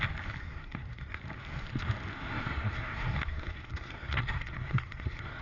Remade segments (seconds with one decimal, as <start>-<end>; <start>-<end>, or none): 0.4-1.2; 2.1-5.4